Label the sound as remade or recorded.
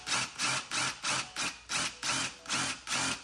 recorded